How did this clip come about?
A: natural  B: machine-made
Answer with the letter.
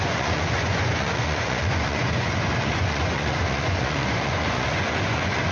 B